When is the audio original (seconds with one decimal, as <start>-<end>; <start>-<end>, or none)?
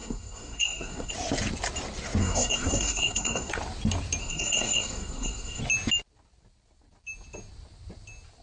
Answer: 1.1-2.2; 3.5-4.2; 5.6-8.4